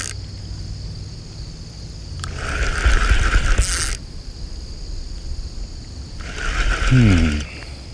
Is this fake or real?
real